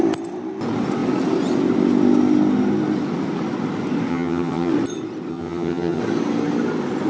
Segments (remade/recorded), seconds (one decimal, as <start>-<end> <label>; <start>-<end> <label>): 0.0-4.1 recorded; 4.1-4.7 remade; 4.7-5.3 recorded; 5.3-6.0 remade; 6.0-7.1 recorded